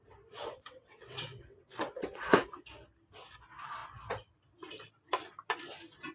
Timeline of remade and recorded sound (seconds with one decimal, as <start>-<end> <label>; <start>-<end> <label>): 0.0-0.4 recorded; 0.4-2.5 remade; 2.5-6.1 recorded